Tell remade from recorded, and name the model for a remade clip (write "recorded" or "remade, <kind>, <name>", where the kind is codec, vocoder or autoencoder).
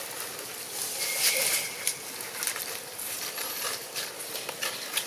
recorded